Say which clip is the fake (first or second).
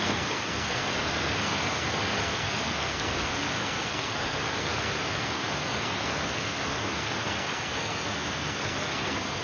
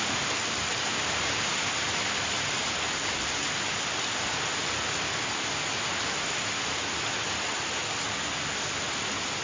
first